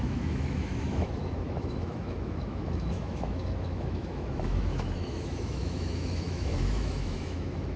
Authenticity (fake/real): fake